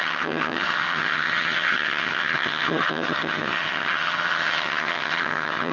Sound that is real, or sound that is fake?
fake